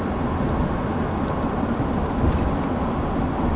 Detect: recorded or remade recorded